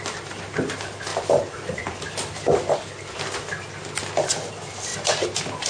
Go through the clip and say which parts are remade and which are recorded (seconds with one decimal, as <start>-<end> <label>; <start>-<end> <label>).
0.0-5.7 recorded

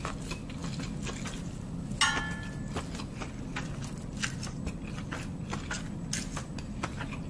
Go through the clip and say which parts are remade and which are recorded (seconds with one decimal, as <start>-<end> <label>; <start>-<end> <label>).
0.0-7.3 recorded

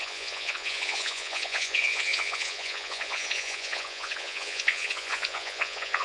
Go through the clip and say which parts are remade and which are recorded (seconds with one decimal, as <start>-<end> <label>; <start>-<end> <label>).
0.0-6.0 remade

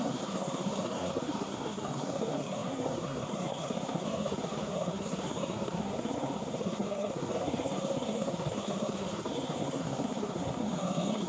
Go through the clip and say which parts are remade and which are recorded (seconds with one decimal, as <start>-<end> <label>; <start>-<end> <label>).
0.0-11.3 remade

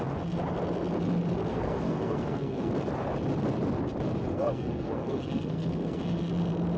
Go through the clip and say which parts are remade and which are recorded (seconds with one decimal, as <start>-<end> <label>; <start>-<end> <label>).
0.0-1.5 recorded; 1.5-2.7 remade; 2.7-4.3 recorded; 4.3-6.0 remade; 6.0-6.8 recorded